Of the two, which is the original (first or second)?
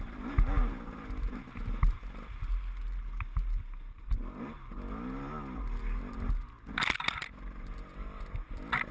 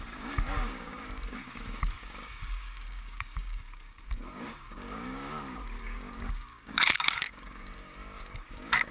first